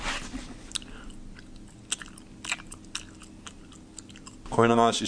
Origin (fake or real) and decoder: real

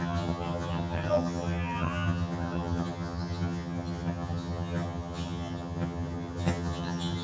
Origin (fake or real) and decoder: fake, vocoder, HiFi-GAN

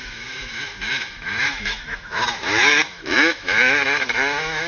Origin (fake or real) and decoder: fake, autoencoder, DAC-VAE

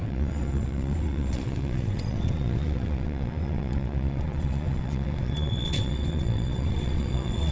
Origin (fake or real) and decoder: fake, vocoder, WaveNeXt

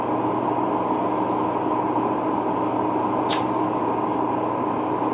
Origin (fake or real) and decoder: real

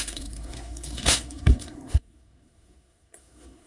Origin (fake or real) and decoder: fake, codec, SNAC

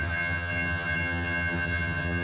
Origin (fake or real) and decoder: fake, vocoder, HiFi-GAN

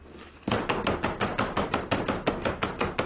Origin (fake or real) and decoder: real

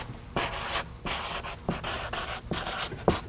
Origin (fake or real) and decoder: real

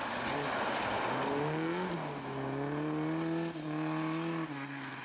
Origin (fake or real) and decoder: real